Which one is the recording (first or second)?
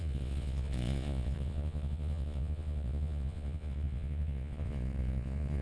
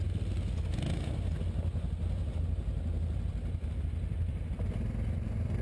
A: second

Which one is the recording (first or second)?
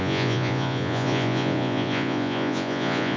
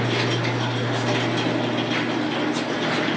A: second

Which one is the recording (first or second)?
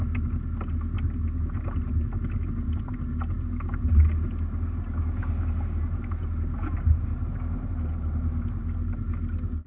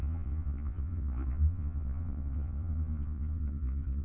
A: first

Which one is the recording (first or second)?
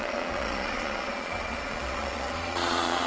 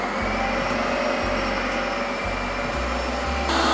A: second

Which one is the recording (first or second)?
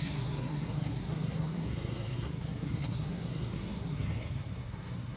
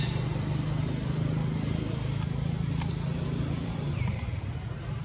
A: second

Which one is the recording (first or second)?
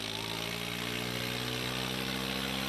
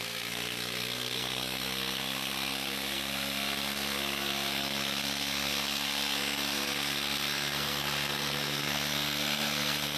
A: first